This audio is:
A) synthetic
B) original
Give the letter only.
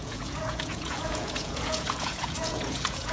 A